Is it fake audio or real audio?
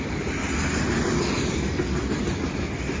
fake